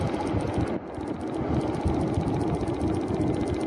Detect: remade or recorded recorded